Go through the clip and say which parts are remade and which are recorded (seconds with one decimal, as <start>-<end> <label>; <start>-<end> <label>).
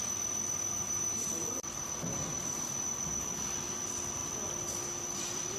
0.0-0.8 recorded; 0.8-1.3 remade; 1.3-5.6 recorded